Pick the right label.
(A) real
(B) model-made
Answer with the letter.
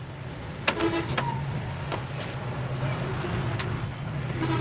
A